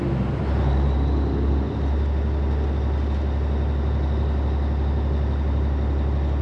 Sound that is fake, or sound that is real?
real